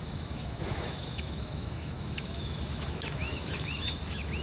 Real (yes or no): no